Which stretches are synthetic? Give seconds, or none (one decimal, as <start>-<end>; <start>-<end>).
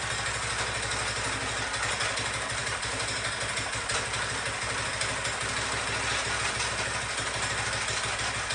none